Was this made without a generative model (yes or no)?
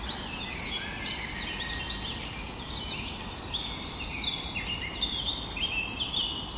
yes